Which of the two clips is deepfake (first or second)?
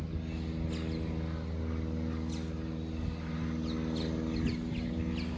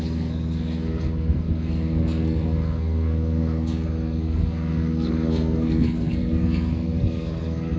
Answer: second